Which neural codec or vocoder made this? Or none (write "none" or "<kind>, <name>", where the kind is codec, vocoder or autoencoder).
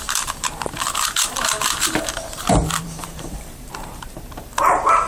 vocoder, BigVGAN v2